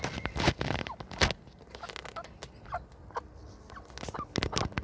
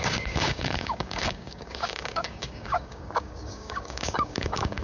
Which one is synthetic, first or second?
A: second